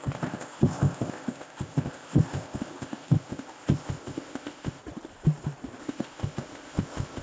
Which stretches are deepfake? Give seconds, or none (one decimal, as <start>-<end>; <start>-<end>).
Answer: 0.0-4.8; 5.8-7.2